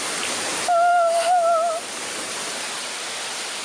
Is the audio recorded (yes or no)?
no